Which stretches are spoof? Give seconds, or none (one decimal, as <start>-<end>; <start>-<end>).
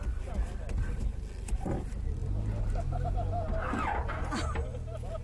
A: none